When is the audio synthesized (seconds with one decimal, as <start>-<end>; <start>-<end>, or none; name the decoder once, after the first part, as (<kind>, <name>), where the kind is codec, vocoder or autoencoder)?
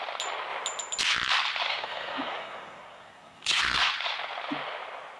1.7-3.9 (codec, SNAC)